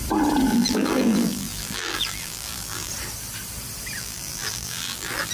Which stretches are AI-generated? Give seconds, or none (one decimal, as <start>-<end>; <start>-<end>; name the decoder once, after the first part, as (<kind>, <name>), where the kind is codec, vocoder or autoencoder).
0.5-2.9 (vocoder, BigVGAN v2); 4.0-5.3